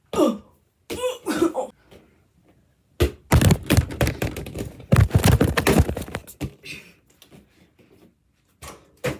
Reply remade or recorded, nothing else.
recorded